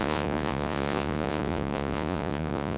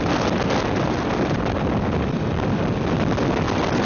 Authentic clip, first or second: second